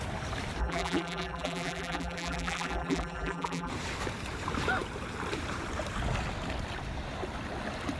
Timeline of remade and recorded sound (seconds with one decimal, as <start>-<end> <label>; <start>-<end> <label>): 0.0-0.6 recorded; 0.6-3.7 remade; 3.7-8.0 recorded